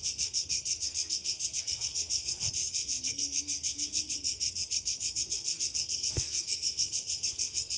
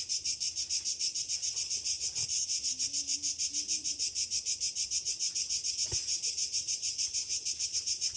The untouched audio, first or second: second